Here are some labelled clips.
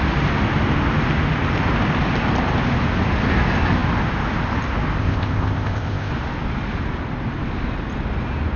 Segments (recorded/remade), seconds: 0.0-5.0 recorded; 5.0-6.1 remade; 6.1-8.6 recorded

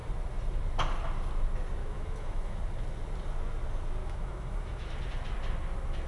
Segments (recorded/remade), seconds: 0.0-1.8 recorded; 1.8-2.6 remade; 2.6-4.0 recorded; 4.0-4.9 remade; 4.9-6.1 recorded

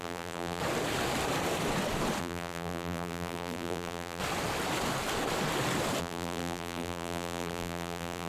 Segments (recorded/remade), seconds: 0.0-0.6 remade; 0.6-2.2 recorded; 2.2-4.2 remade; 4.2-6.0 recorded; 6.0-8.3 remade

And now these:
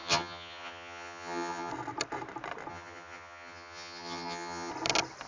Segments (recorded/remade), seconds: 0.0-1.7 remade; 1.7-2.7 recorded; 2.7-4.7 remade; 4.7-5.3 recorded

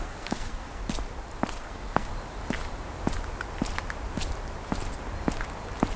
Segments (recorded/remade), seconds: 0.0-0.8 remade; 0.8-1.6 recorded; 1.6-2.1 remade; 2.1-6.0 recorded

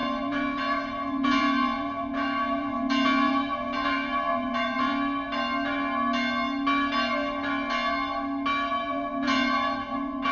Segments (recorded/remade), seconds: 0.0-4.9 remade; 4.9-8.7 recorded; 8.7-10.3 remade

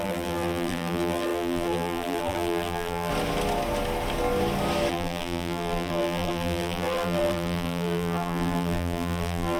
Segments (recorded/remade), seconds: 0.0-3.1 remade; 3.1-4.9 recorded; 4.9-9.6 remade